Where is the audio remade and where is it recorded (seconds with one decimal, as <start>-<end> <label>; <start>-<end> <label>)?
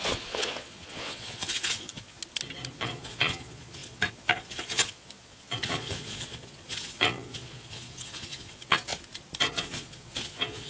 0.0-2.2 remade; 2.2-2.7 recorded; 2.7-8.9 remade; 8.9-9.5 recorded; 9.5-10.7 remade